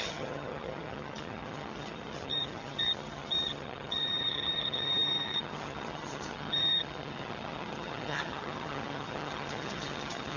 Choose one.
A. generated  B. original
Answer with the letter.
A